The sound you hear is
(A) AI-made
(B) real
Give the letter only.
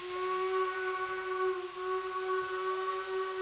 B